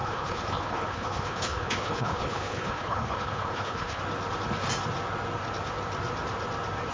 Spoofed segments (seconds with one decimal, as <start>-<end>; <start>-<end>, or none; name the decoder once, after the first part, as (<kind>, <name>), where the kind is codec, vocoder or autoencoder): 0.0-4.0 (codec, HILCodec)